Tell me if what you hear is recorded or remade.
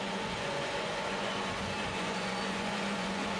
remade